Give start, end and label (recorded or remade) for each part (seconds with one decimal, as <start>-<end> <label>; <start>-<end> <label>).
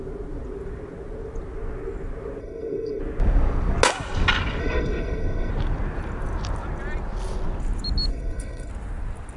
0.0-2.4 recorded; 2.4-3.0 remade; 3.0-4.6 recorded; 4.6-5.5 remade; 5.5-8.1 recorded; 8.1-8.7 remade; 8.7-9.4 recorded